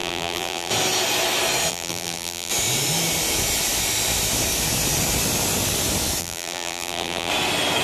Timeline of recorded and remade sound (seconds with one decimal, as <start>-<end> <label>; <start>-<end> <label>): 0.0-0.7 remade; 0.7-1.7 recorded; 1.7-2.5 remade; 2.5-6.2 recorded; 6.2-7.3 remade; 7.3-7.8 recorded